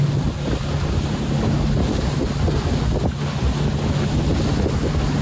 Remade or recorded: recorded